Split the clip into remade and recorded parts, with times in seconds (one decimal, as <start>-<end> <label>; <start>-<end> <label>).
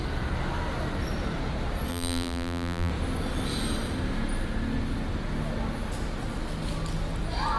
0.0-1.9 recorded; 1.9-2.9 remade; 2.9-7.6 recorded